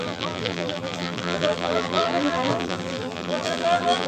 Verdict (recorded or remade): remade